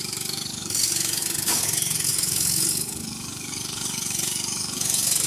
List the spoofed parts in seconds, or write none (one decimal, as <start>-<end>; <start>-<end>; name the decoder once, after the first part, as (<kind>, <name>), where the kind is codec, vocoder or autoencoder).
0.0-5.3 (codec, DAC)